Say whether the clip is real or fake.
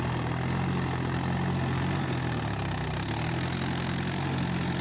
real